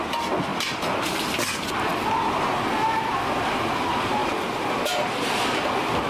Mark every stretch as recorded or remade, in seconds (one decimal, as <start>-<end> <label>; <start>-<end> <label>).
0.0-6.1 recorded